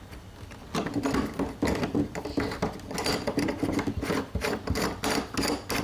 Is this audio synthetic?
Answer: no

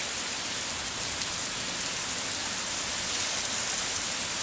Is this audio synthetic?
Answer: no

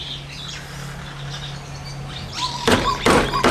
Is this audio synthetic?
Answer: no